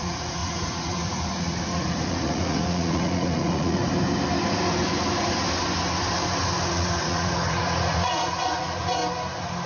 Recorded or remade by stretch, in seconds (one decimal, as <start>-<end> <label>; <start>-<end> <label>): 0.0-3.8 remade; 3.8-6.7 recorded; 6.7-9.0 remade; 9.0-9.7 recorded